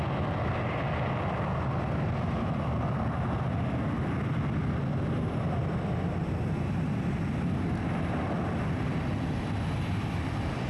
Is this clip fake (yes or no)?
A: no